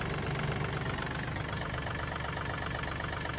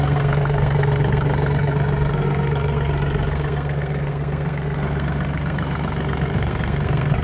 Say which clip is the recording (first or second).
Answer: first